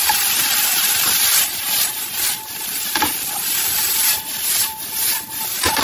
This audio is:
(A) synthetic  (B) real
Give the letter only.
A